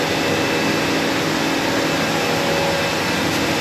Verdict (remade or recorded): recorded